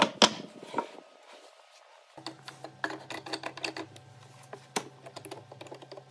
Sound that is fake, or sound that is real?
real